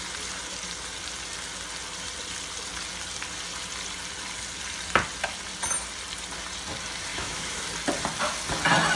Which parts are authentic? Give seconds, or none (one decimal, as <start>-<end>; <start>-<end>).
0.0-7.1; 7.6-9.0